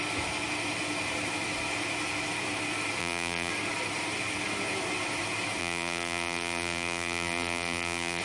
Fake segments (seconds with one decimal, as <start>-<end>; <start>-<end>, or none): 3.0-3.5; 5.6-8.2